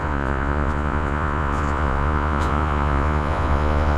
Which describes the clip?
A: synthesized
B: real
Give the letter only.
A